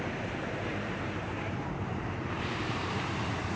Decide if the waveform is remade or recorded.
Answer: remade